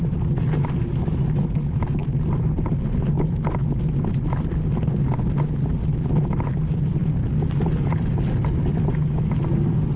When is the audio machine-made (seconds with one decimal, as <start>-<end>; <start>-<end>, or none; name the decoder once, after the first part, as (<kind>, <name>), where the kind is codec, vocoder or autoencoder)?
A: none